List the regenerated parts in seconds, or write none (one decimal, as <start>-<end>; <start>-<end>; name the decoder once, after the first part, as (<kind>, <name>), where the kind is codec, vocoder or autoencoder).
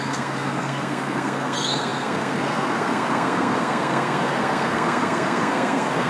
0.0-6.1 (codec, SNAC)